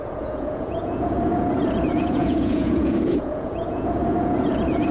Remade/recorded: remade